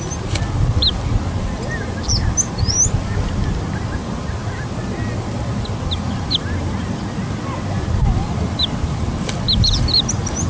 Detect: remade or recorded recorded